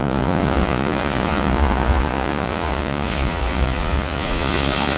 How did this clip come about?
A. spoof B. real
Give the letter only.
A